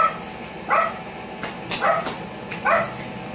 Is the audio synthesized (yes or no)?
no